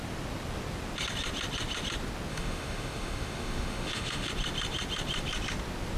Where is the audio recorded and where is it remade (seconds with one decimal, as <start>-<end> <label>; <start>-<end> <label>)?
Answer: 0.0-2.3 recorded; 2.3-4.3 remade; 4.3-6.0 recorded